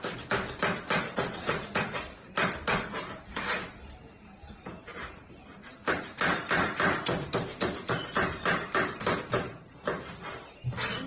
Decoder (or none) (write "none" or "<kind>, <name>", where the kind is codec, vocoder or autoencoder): vocoder, BigVGAN v2